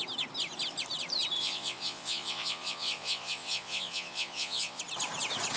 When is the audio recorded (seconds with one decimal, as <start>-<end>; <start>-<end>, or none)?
0.0-1.4; 4.8-5.6